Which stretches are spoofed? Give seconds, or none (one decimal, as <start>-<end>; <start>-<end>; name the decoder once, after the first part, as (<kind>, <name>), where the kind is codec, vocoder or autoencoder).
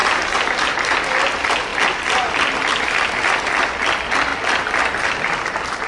none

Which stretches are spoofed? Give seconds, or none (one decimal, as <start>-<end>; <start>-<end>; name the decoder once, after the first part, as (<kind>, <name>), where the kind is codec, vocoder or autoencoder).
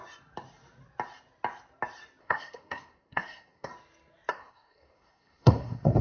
2.2-3.7 (codec, SNAC); 4.3-6.0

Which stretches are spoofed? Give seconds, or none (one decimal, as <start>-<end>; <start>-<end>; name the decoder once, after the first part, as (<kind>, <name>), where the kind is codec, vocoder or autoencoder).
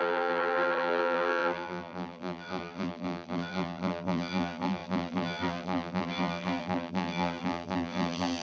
0.0-8.4 (vocoder, BigVGAN v2)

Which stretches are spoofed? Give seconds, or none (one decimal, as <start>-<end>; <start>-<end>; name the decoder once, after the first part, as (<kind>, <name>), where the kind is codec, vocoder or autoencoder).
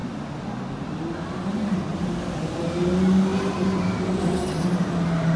1.9-2.9 (vocoder, BigVGAN v2); 3.3-4.9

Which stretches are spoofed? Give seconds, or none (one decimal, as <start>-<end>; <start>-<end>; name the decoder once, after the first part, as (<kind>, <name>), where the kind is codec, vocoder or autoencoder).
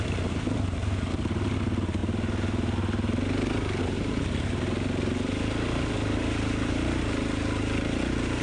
none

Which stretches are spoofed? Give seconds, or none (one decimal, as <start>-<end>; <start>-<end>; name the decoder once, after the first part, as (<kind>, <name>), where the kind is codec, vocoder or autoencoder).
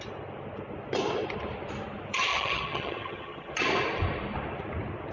2.3-3.5 (vocoder, HiFi-GAN)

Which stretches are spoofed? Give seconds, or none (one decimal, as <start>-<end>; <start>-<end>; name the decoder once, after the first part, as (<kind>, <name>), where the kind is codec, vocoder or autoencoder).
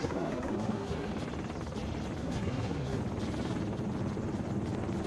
0.0-1.1 (codec, SNAC); 2.2-3.0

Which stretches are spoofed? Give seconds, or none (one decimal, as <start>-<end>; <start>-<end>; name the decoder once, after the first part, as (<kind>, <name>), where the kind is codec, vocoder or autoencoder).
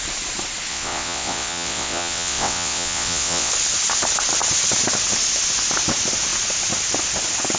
0.7-3.5 (vocoder, WaveNeXt)